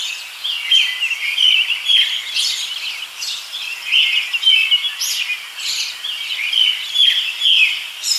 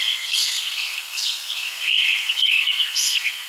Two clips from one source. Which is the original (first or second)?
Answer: first